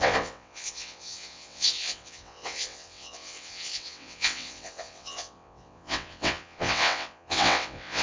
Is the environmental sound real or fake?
fake